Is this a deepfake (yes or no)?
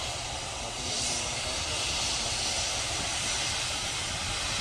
yes